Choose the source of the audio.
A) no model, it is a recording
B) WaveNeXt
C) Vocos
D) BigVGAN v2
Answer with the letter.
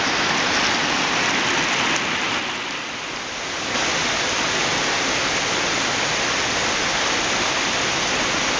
A